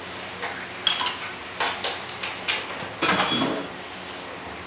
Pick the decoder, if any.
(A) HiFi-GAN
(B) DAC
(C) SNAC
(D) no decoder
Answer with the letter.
D